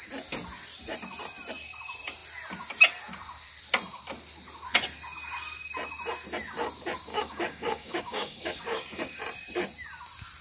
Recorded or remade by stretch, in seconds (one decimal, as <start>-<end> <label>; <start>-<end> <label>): 0.0-7.1 recorded; 7.1-9.2 remade; 9.2-10.4 recorded